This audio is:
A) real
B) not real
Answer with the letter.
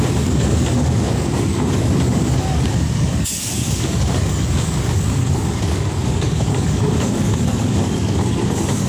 B